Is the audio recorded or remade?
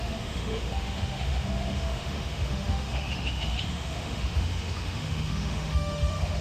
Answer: remade